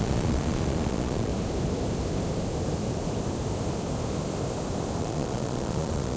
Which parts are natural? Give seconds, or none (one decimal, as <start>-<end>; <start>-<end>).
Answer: 1.3-5.0

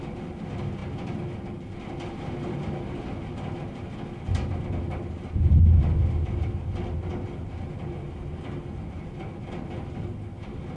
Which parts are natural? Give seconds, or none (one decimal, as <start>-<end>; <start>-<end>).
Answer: 0.0-10.8

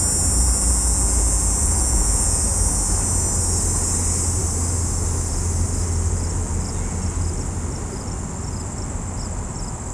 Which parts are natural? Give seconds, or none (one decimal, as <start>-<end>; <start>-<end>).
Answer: 0.0-1.6; 2.4-9.9

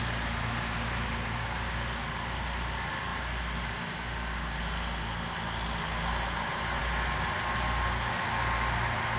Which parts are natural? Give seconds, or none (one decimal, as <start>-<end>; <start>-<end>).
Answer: 0.0-9.2

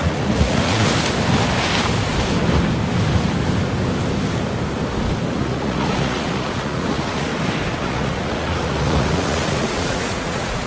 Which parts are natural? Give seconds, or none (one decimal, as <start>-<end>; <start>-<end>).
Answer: 0.9-5.3; 7.3-7.8

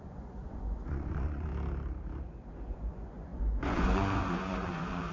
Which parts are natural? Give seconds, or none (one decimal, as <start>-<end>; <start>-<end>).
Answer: 1.5-2.5